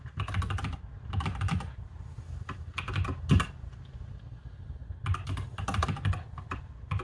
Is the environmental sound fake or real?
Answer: real